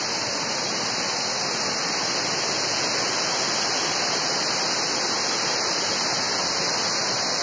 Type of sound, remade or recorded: recorded